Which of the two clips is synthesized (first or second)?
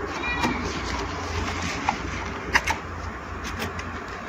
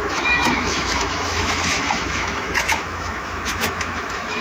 second